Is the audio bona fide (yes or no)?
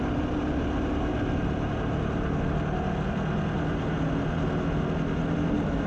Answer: yes